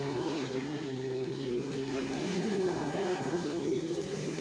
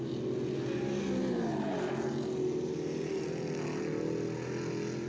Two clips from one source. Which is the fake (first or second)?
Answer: first